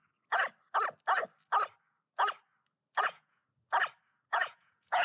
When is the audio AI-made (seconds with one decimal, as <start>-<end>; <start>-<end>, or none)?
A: 3.0-3.4; 4.3-5.0